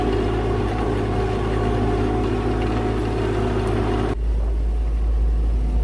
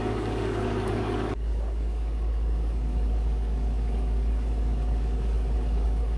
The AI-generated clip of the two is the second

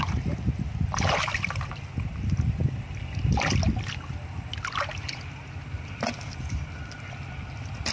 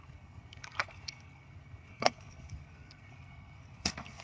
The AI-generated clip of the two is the second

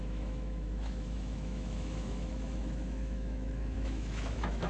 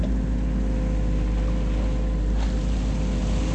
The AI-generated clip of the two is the first